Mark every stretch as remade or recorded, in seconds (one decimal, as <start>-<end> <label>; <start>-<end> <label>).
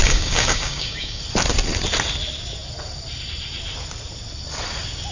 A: 0.0-1.2 remade; 1.2-5.1 recorded